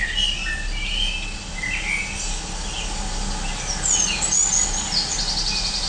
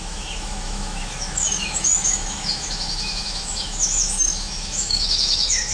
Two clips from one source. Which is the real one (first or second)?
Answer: first